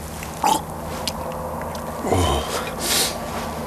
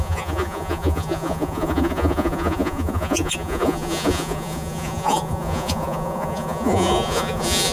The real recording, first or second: first